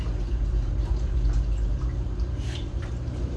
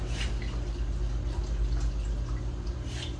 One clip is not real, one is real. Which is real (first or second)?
second